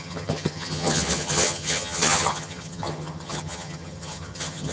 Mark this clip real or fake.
fake